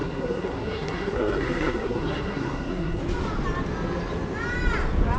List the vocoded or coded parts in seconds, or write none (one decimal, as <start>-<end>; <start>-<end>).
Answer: 0.0-3.0